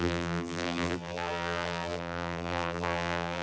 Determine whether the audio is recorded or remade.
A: remade